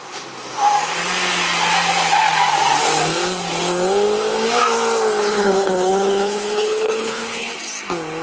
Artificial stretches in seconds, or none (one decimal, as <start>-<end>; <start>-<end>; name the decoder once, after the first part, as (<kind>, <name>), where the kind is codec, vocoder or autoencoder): 5.2-7.5 (codec, HILCodec)